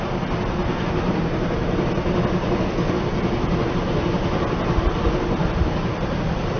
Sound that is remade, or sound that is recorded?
recorded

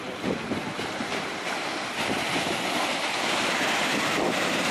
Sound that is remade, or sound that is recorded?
remade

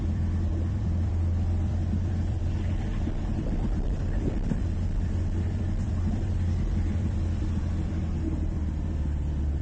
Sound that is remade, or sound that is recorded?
remade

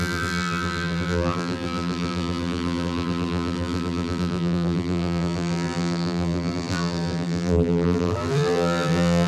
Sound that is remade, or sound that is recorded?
remade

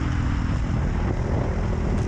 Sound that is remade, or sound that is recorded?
recorded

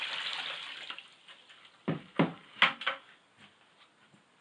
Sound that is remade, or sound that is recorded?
recorded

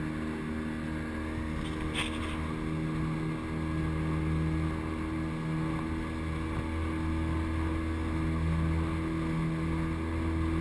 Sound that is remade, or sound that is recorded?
recorded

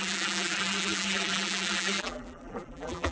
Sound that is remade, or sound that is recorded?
remade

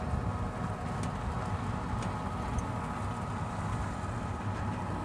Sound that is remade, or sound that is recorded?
recorded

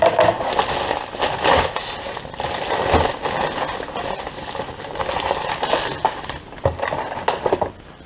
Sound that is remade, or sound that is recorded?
recorded